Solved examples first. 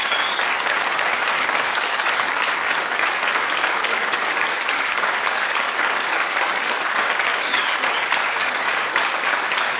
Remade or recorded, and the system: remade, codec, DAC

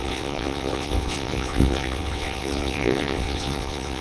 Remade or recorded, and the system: remade, vocoder, WaveNeXt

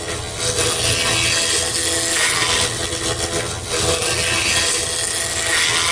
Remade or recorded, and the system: recorded